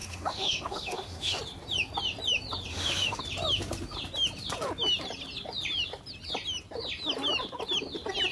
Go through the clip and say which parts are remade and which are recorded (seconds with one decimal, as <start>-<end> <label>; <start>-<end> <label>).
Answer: 0.0-1.4 remade; 1.4-2.7 recorded; 2.7-3.2 remade; 3.2-8.3 recorded